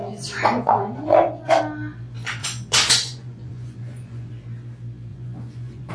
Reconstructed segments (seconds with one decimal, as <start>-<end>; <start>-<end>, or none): 0.0-1.6; 2.4-4.3; 5.1-5.9